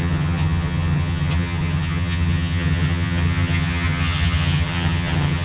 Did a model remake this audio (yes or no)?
yes